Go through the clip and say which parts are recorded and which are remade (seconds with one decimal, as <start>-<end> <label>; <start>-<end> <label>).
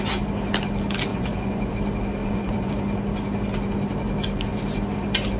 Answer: 0.0-1.1 recorded; 1.1-1.7 remade; 1.7-2.2 recorded; 2.2-2.7 remade; 2.7-5.4 recorded